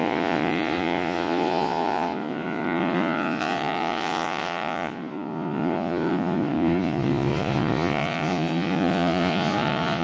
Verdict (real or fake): fake